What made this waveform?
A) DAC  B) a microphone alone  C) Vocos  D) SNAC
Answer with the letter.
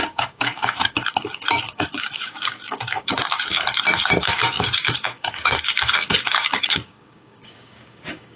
A